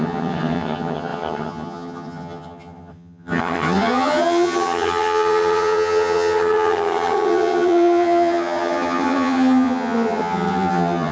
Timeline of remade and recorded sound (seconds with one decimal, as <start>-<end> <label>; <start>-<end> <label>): 0.0-11.1 remade

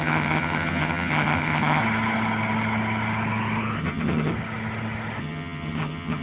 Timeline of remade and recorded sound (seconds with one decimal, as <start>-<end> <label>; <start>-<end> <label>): 0.0-1.8 remade; 1.8-3.8 recorded; 3.8-4.3 remade; 4.3-5.2 recorded; 5.2-6.2 remade

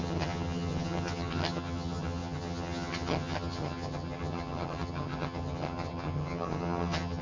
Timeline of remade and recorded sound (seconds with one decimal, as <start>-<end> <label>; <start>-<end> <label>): 0.0-7.2 remade

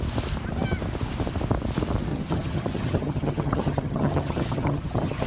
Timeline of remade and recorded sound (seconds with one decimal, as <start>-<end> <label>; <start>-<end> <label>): 0.0-2.1 recorded; 2.1-5.3 remade

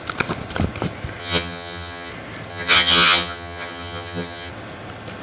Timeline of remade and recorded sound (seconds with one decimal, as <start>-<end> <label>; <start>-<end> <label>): 0.0-1.2 recorded; 1.2-2.1 remade; 2.1-2.5 recorded; 2.5-4.5 remade; 4.5-5.2 recorded

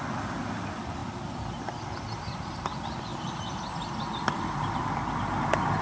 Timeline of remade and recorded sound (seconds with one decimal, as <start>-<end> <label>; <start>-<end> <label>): 0.0-5.8 recorded